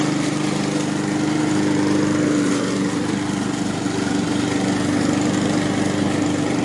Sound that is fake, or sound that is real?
real